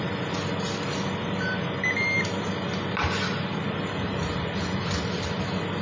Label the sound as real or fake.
real